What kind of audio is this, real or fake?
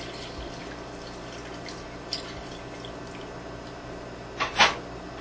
real